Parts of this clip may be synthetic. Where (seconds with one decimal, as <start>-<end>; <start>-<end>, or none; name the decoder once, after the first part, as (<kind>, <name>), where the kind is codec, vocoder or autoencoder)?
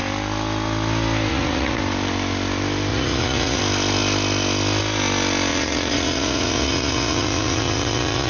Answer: 1.3-1.8 (vocoder, Vocos); 2.9-3.6; 5.5-8.3